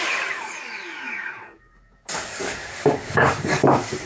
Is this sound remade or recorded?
remade